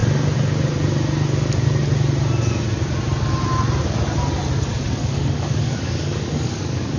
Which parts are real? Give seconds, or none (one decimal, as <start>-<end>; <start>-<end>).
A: 0.0-5.0